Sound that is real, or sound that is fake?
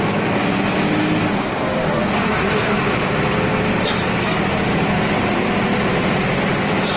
real